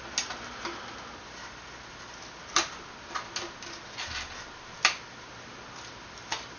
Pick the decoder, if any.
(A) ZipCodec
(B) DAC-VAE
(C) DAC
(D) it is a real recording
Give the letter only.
D